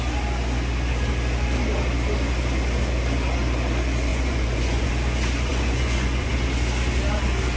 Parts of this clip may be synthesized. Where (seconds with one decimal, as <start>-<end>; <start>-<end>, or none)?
4.1-4.9; 5.5-6.3